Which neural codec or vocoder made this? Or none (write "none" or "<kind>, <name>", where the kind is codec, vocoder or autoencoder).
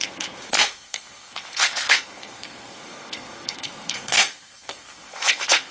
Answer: codec, SNAC